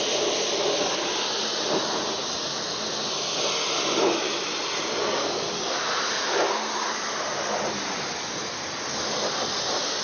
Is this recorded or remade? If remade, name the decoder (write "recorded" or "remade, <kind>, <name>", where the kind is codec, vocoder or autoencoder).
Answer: recorded